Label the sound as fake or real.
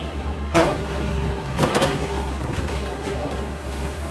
fake